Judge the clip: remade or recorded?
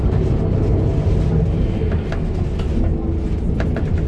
recorded